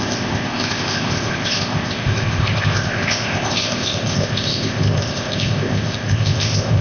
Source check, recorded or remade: remade